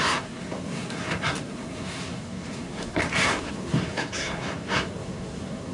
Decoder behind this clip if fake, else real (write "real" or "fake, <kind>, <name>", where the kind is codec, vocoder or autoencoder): fake, codec, SNAC